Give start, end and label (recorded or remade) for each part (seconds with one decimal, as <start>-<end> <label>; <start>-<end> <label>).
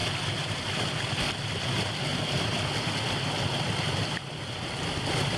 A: 0.0-5.4 recorded